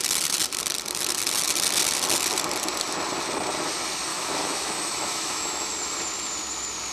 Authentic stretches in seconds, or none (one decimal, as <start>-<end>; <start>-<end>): 0.0-4.1; 5.7-6.9